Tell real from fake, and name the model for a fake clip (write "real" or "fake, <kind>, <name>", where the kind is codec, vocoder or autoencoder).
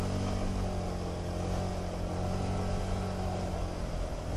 real